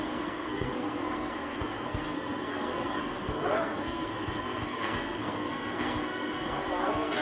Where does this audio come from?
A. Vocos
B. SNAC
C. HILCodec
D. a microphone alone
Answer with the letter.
B